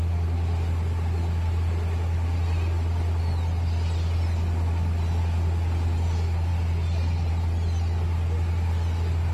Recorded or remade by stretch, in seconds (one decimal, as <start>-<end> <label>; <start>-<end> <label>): 0.0-9.3 recorded